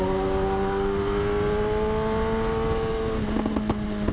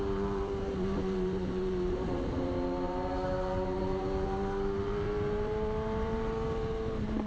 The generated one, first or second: second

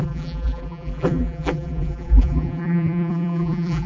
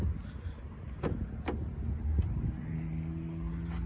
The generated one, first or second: first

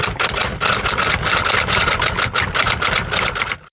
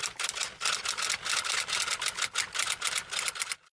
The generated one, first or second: first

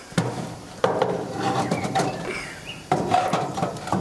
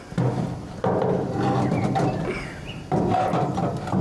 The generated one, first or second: first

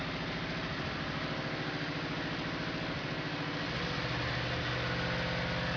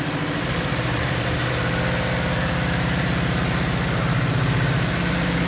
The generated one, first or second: second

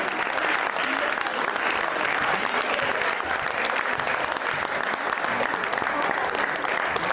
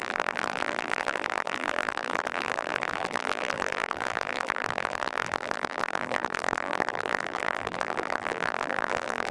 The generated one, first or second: second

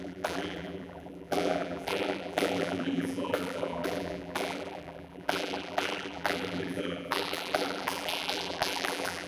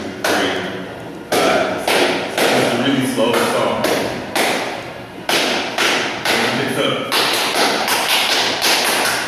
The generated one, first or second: first